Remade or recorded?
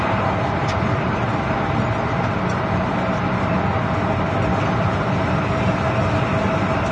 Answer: recorded